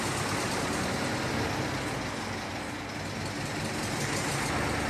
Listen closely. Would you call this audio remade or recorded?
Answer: recorded